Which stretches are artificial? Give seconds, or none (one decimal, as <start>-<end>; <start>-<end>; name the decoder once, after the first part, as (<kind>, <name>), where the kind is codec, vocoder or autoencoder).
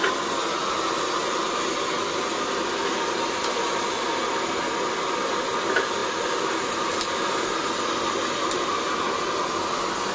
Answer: none